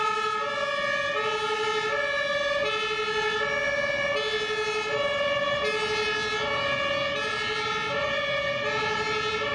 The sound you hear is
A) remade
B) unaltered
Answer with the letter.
B